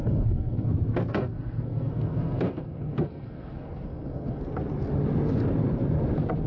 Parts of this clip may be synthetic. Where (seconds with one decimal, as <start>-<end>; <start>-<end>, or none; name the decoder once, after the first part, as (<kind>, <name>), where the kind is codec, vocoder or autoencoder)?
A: 0.0-0.7 (codec, SNAC); 1.1-4.4